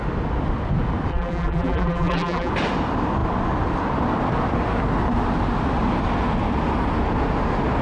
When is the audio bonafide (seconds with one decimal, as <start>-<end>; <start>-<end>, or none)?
0.0-1.1; 2.5-7.8